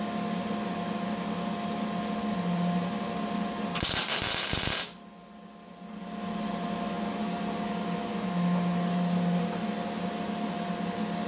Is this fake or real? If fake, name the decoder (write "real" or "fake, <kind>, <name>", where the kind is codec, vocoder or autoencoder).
real